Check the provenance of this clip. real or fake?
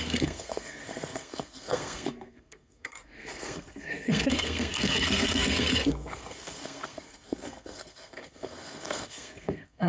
fake